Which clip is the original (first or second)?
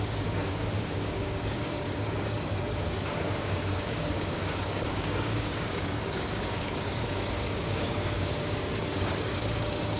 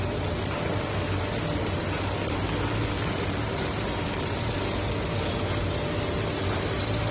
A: second